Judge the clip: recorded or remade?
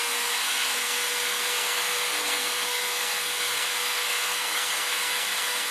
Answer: remade